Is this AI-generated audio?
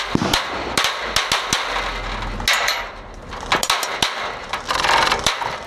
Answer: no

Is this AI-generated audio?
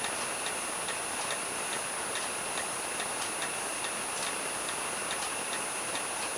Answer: no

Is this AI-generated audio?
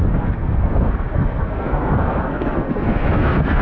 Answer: yes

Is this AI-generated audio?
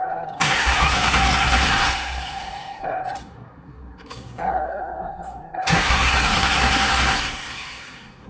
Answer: yes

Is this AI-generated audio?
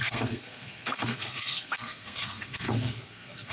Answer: yes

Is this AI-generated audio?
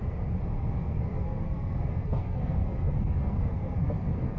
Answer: yes